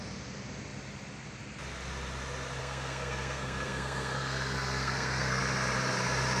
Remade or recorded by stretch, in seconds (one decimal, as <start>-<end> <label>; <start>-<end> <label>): 0.0-2.6 recorded; 2.6-5.4 remade; 5.4-6.4 recorded